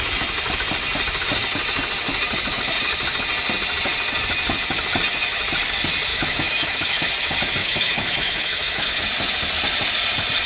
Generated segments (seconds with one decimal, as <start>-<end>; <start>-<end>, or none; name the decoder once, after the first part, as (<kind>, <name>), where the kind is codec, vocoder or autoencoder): 6.1-7.1 (autoencoder, DAC-VAE); 7.6-9.0